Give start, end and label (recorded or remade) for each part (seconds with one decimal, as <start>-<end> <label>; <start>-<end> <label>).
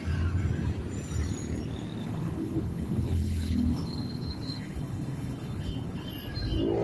0.0-2.0 recorded; 2.0-6.1 remade; 6.1-6.8 recorded